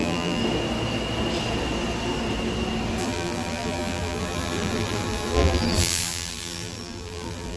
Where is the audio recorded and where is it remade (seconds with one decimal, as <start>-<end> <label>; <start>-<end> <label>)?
0.0-0.4 remade; 0.4-3.0 recorded; 3.0-7.6 remade